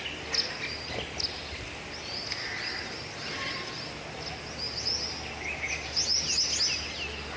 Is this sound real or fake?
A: real